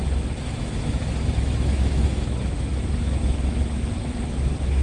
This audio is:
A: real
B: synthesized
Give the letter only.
B